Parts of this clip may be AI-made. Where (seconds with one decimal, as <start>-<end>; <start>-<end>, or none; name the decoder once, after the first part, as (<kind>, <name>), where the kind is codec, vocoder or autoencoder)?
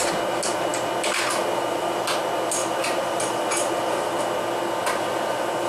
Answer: 2.6-4.2 (vocoder, BigVGAN v2)